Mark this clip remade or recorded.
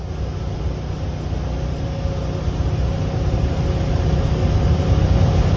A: recorded